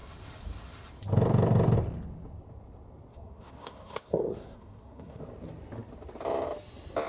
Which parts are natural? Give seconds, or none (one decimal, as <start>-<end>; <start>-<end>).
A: 0.0-3.1; 5.2-7.1